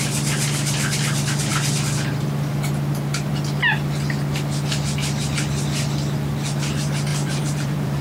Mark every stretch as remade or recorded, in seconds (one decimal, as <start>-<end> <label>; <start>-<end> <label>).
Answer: 0.0-7.1 recorded; 7.1-8.0 remade